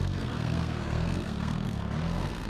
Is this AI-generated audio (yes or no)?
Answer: yes